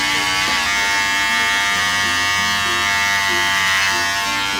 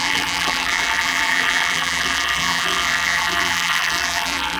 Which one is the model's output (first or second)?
second